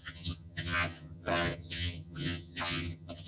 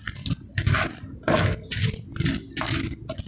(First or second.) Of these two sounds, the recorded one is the second